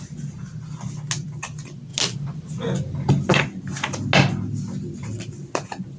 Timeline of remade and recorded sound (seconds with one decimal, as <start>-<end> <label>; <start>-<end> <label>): 0.0-6.0 recorded